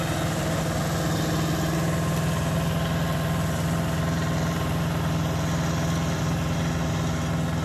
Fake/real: real